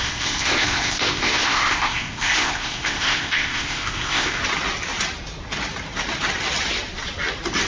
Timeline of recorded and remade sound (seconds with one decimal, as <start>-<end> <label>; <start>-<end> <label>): 0.0-4.4 remade; 4.4-7.7 recorded